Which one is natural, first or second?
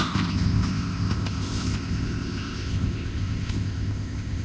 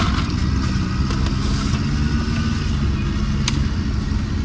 second